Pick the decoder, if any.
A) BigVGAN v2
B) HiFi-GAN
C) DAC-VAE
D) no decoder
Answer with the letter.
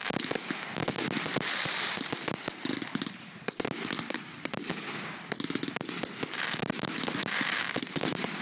D